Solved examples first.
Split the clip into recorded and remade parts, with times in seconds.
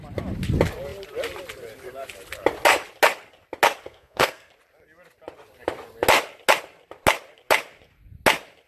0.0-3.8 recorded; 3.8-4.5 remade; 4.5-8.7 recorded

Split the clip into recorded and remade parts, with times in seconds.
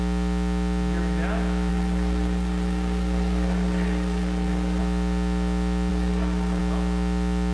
0.0-1.7 recorded; 1.7-4.8 remade; 4.8-5.9 recorded; 5.9-6.6 remade; 6.6-7.5 recorded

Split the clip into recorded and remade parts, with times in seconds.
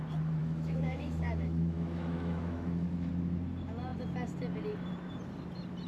0.0-0.4 recorded; 0.4-3.1 remade; 3.1-5.9 recorded